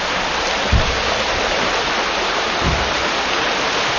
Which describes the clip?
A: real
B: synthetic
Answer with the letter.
A